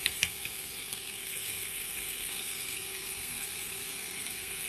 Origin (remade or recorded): remade